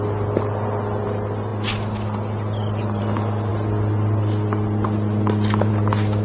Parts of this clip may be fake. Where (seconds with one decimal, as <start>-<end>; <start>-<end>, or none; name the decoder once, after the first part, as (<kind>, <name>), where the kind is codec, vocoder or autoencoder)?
none

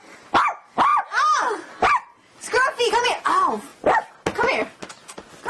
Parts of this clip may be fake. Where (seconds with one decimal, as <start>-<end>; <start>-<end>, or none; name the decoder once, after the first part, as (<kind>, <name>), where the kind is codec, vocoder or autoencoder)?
none

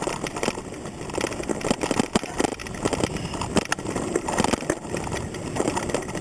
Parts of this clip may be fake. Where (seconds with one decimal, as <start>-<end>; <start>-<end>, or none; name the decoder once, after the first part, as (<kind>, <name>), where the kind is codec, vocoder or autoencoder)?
none

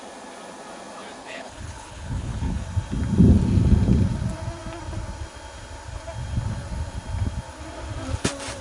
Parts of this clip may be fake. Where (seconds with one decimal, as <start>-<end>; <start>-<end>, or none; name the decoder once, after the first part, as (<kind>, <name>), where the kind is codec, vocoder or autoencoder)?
1.2-2.6 (codec, HILCodec)